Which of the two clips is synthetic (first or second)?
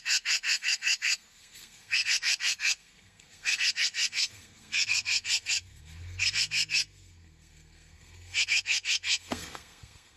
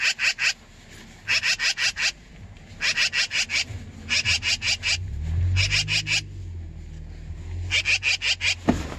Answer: first